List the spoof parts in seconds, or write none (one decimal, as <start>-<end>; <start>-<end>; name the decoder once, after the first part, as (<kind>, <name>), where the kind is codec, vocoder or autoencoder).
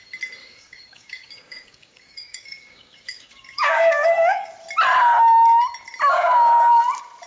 0.4-4.5 (codec, DAC); 6.1-6.8